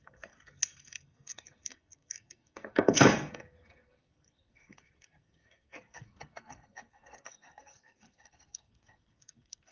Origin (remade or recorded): remade